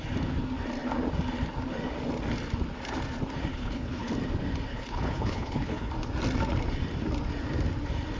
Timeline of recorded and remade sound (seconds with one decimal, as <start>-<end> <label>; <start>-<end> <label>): 0.0-3.5 recorded; 3.5-4.1 remade; 4.1-4.7 recorded; 4.7-5.9 remade; 5.9-8.2 recorded